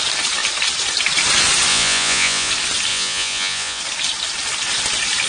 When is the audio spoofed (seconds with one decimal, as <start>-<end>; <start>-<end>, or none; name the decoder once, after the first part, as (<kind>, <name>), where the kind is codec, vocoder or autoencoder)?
1.7-2.5 (vocoder, Vocos); 2.9-3.8